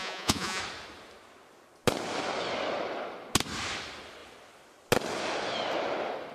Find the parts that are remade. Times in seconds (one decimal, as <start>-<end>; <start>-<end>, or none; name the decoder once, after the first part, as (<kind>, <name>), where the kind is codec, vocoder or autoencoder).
0.0-0.6 (vocoder, Vocos)